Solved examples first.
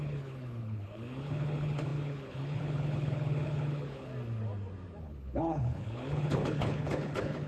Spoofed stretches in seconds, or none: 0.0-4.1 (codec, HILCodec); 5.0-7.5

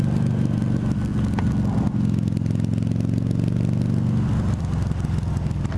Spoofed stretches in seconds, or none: none

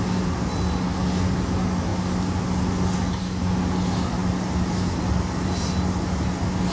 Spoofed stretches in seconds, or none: none

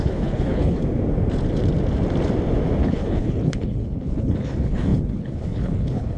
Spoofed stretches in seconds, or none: 0.0-0.8 (codec, HILCodec); 2.8-6.2

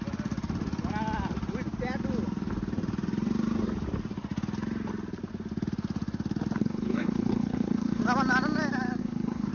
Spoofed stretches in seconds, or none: 6.6-8.0 (codec, HILCodec); 9.0-9.5